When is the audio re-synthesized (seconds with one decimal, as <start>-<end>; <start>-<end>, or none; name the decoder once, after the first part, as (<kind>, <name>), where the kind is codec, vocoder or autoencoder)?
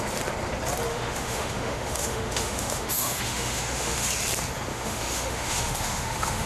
0.9-4.1 (autoencoder, DAC-VAE); 4.7-6.5